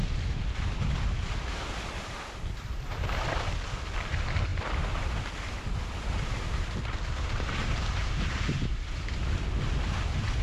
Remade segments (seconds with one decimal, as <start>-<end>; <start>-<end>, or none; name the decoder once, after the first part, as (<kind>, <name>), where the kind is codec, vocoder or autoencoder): none